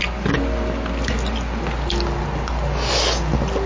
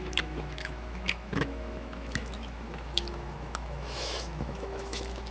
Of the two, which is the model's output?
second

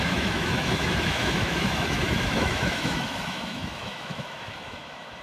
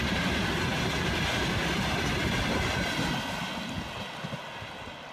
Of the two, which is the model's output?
first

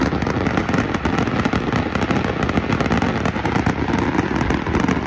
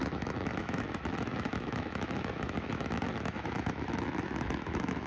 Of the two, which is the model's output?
second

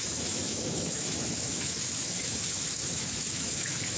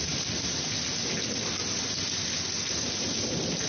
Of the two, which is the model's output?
first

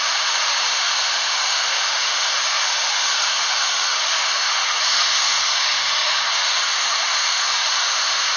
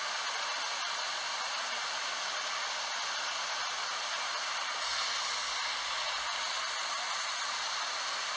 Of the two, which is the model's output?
first